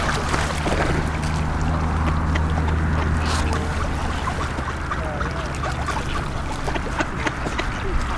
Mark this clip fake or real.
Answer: real